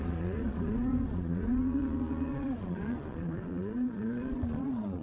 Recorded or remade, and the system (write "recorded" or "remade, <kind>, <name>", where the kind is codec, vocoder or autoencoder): remade, vocoder, Vocos